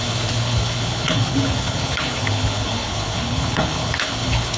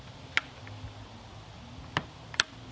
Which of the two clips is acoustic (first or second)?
second